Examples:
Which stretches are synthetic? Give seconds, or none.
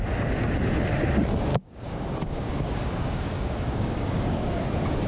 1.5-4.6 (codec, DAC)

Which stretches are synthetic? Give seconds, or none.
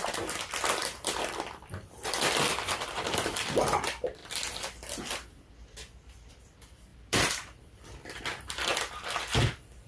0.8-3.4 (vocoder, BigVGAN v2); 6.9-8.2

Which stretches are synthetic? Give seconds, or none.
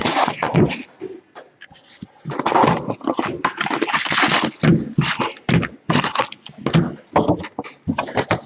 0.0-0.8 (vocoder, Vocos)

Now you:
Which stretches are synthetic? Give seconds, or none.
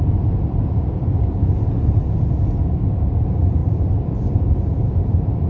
3.6-5.5 (vocoder, BigVGAN v2)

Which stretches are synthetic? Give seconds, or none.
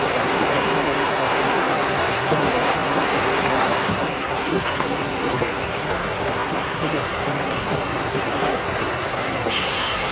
0.0-10.1 (codec, SNAC)